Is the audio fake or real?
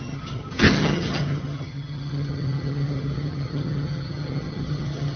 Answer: fake